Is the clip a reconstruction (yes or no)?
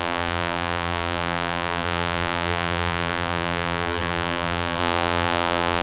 yes